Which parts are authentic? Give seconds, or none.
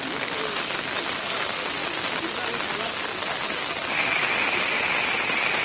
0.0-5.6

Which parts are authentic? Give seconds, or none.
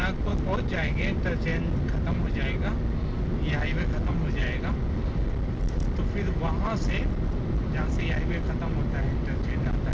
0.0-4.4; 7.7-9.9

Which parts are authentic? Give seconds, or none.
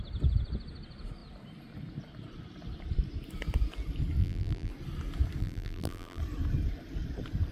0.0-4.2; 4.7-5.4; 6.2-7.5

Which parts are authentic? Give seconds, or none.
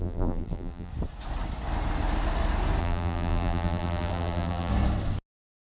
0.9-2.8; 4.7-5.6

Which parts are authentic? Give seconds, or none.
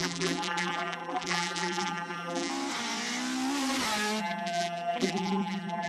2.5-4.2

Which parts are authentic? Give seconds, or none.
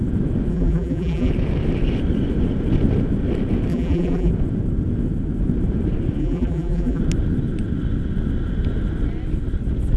0.0-0.5; 1.3-3.7; 4.3-6.2; 7.0-10.0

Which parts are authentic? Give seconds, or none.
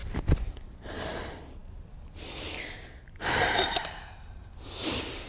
0.0-1.6; 3.3-5.3